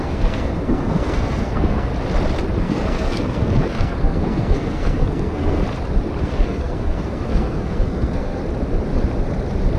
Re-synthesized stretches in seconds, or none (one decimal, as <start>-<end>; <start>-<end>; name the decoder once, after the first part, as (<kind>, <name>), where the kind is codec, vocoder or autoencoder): 0.0-1.9 (codec, SNAC); 2.6-5.6; 6.2-8.4